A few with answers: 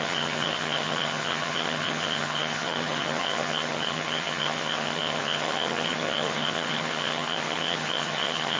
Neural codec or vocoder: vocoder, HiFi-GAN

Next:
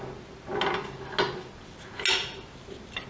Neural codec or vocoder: none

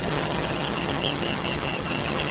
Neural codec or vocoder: vocoder, HiFi-GAN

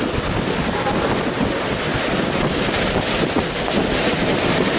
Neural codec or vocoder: none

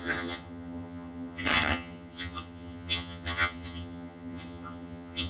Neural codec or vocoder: vocoder, HiFi-GAN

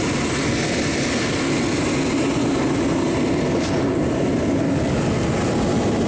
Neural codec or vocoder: none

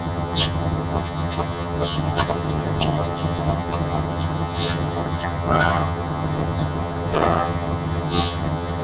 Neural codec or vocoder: vocoder, HiFi-GAN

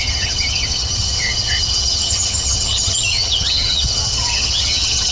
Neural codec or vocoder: vocoder, HiFi-GAN